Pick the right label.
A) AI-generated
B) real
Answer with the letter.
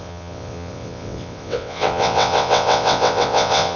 A